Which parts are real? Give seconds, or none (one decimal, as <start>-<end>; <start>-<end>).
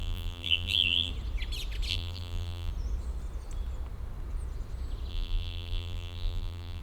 1.1-1.9; 2.7-5.1